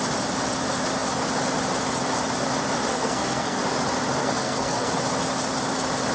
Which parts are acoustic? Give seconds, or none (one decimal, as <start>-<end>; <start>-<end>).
0.0-2.9; 3.6-4.2; 4.9-6.1